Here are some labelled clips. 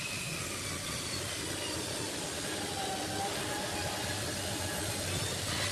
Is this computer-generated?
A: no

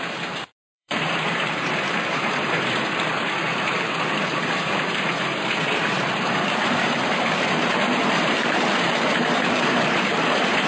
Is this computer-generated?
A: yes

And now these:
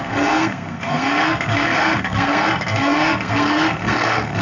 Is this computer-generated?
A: yes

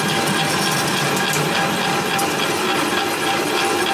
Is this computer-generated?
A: no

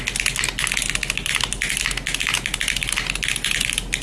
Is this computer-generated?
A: no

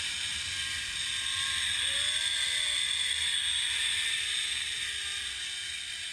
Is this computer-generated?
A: no